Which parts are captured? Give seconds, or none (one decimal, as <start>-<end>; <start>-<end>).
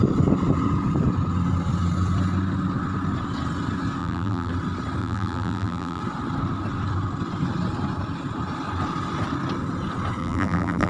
0.0-4.0; 4.5-5.0; 6.0-10.2